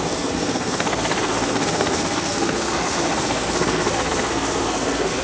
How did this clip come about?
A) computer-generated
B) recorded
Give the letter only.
A